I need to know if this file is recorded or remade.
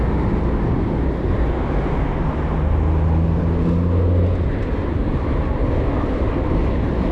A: recorded